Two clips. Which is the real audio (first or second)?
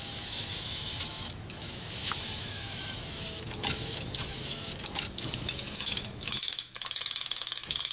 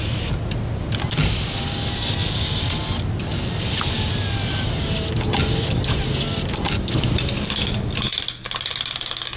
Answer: second